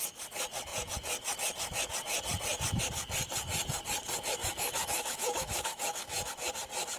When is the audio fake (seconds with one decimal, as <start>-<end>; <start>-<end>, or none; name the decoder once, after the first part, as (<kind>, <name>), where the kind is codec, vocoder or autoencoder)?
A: 4.4-6.3 (autoencoder, DAC-VAE)